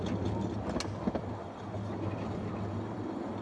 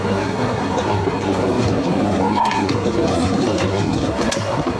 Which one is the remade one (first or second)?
second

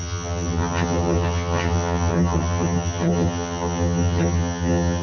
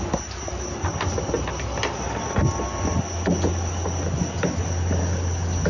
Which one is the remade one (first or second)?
first